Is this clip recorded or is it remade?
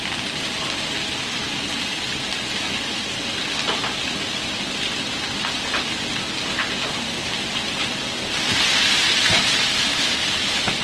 recorded